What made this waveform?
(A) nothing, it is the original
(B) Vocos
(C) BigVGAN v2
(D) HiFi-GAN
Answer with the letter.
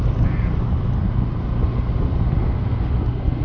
A